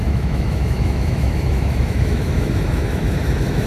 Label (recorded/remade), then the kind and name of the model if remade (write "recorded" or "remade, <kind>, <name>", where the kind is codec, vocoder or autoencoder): remade, autoencoder, DAC-VAE